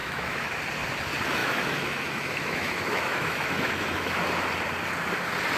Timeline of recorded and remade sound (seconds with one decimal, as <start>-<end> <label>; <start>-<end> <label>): 0.0-0.6 remade; 0.6-1.4 recorded; 1.4-4.1 remade; 4.1-5.6 recorded